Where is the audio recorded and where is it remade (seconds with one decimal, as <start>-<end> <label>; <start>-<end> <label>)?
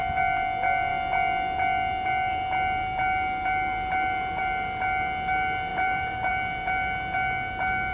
0.0-5.7 recorded; 5.7-6.3 remade; 6.3-7.9 recorded